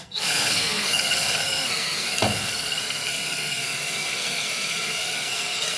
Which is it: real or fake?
fake